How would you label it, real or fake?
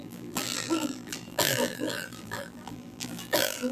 fake